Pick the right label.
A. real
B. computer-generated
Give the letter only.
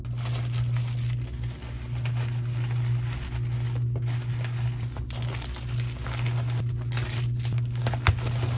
A